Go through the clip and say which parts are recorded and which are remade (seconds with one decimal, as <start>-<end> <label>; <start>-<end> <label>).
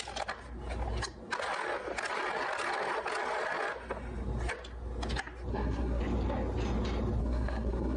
0.0-5.5 recorded; 5.5-6.0 remade; 6.0-7.2 recorded; 7.2-8.0 remade